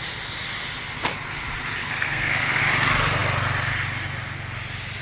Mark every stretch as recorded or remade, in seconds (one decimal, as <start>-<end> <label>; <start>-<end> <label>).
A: 0.0-1.8 recorded; 1.8-2.6 remade; 2.6-5.0 recorded